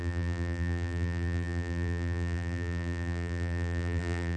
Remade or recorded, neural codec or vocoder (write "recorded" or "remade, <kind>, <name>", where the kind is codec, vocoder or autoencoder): remade, vocoder, BigVGAN v2